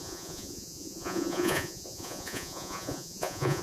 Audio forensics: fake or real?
fake